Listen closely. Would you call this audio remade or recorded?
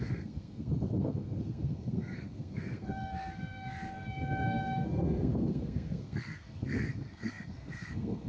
remade